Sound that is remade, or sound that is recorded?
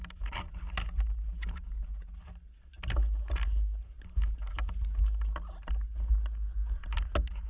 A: recorded